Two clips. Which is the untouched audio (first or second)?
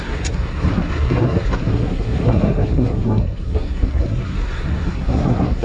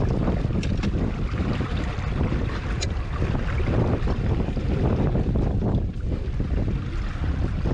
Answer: second